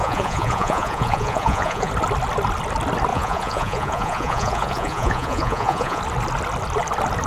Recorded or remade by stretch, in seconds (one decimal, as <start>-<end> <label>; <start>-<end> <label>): 0.0-1.9 remade; 1.9-3.1 recorded; 3.1-6.0 remade; 6.0-7.3 recorded